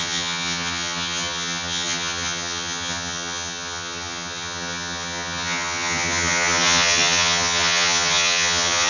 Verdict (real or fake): fake